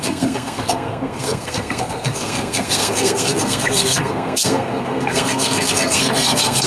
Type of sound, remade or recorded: remade